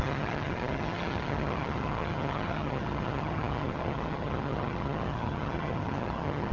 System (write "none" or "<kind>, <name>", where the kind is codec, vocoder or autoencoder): vocoder, HiFi-GAN